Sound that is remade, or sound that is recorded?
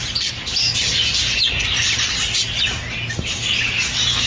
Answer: recorded